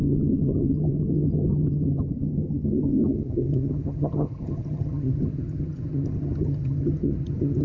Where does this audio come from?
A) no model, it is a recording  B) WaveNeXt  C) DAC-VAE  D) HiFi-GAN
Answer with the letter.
D